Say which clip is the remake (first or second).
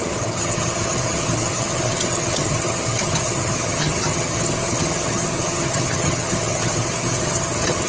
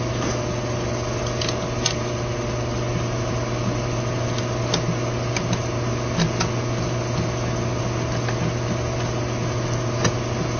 first